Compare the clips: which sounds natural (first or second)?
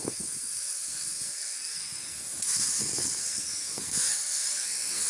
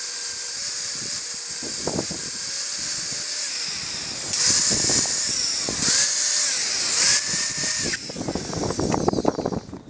second